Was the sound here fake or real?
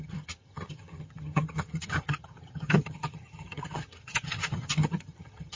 fake